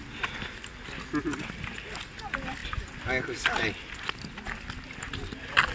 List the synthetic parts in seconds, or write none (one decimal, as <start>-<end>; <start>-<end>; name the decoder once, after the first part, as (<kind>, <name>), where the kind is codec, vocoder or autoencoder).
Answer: none